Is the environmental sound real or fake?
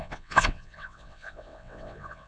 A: fake